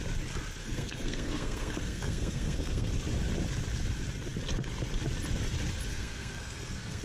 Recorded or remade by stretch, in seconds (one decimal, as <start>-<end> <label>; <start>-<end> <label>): 0.0-0.6 recorded; 0.6-2.9 remade; 2.9-5.9 recorded; 5.9-7.0 remade